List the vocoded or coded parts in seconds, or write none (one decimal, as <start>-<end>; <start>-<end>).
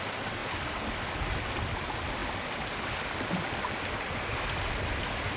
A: none